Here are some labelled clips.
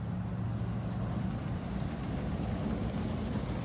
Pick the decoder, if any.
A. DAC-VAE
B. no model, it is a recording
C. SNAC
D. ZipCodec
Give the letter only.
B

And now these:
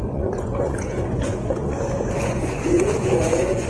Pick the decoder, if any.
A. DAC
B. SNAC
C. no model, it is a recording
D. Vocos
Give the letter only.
D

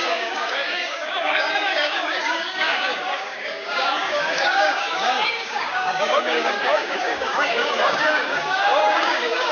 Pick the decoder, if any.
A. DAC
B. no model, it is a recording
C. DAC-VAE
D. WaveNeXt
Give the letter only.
A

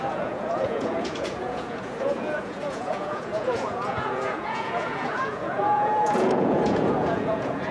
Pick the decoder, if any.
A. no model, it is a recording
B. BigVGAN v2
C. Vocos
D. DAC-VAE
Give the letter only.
C